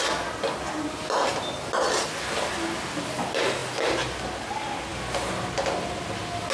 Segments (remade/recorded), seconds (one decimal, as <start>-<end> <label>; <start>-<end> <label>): 0.0-6.5 recorded

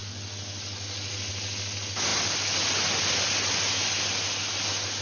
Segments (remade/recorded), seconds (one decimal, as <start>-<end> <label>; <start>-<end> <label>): 0.0-5.0 recorded

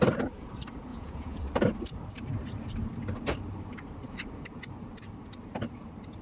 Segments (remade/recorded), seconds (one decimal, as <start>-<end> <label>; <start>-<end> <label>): 0.0-0.9 recorded; 0.9-1.4 remade; 1.4-6.2 recorded

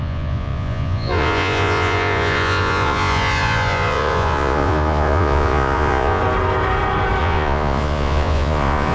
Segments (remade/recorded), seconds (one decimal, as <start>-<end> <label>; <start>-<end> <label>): 0.0-6.2 remade; 6.2-7.2 recorded; 7.2-8.9 remade